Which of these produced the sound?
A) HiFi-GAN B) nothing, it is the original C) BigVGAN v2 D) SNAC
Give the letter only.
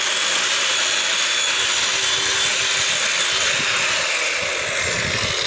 B